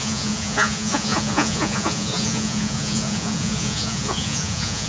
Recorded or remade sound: remade